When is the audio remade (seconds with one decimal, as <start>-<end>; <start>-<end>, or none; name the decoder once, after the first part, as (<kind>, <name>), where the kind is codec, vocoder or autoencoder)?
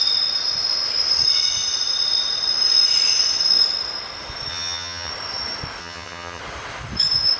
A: 4.5-5.1 (vocoder, HiFi-GAN); 5.8-6.4